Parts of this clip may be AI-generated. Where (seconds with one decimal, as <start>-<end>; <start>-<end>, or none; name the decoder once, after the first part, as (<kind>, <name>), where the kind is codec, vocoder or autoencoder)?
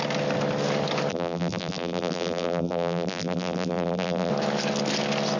1.1-4.3 (vocoder, BigVGAN v2)